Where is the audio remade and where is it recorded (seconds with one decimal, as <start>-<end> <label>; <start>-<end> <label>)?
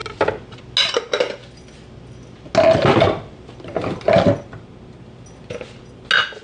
0.0-6.4 recorded